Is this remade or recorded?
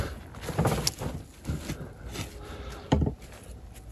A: recorded